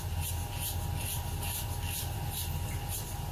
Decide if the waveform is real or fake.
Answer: real